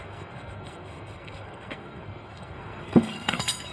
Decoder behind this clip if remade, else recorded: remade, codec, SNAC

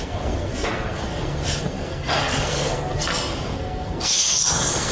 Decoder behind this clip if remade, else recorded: remade, codec, SNAC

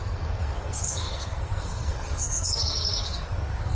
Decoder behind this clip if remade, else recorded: remade, codec, SNAC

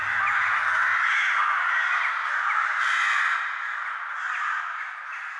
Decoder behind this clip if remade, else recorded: recorded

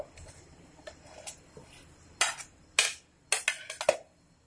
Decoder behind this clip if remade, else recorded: recorded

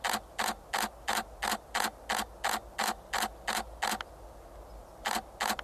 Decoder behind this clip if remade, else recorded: recorded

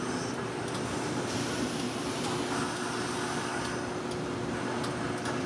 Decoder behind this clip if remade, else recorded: recorded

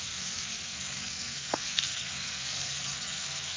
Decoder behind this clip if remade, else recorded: remade, codec, SNAC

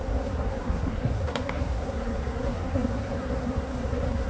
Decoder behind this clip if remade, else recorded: remade, codec, SNAC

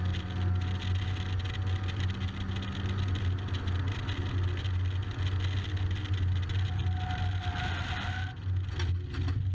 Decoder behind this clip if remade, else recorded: recorded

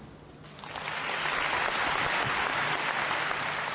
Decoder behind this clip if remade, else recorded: recorded